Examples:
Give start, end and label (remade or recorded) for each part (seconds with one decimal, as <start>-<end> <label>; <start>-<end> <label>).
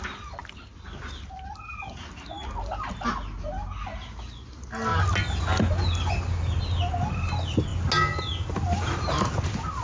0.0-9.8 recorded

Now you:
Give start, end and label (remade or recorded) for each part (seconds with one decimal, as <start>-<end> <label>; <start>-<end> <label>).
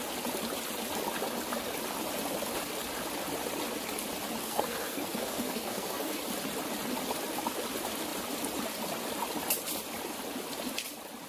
0.0-4.4 recorded; 4.4-6.2 remade; 6.2-11.3 recorded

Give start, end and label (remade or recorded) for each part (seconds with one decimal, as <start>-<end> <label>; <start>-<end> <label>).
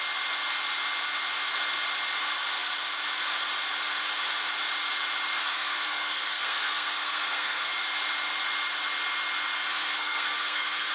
0.0-5.4 recorded; 5.4-7.7 remade; 7.7-9.7 recorded; 9.7-10.9 remade